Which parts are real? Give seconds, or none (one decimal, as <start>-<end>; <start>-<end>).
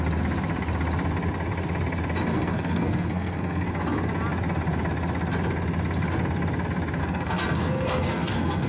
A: 0.0-2.3; 3.7-7.0